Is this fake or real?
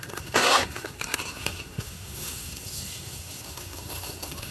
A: fake